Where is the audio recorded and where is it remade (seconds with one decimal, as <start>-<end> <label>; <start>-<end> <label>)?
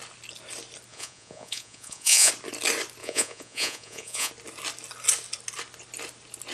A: 0.0-0.9 recorded; 0.9-2.3 remade; 2.3-3.0 recorded; 3.0-4.3 remade; 4.3-6.5 recorded